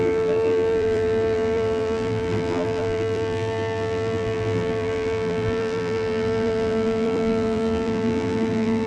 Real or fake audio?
fake